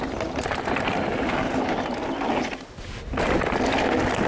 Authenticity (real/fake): real